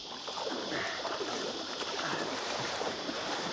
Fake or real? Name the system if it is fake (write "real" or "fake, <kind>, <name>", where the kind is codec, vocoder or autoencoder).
fake, vocoder, BigVGAN v2